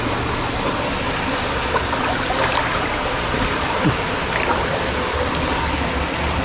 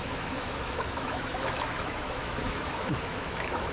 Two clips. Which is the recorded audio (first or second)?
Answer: first